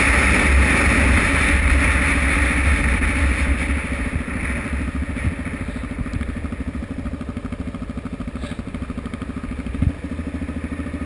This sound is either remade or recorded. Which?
recorded